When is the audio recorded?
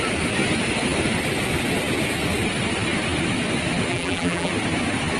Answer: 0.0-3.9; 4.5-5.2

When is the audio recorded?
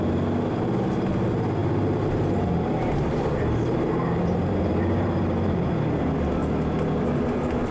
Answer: 0.0-1.6; 5.8-7.7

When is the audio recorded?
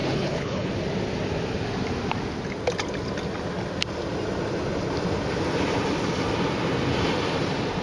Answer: 0.7-7.8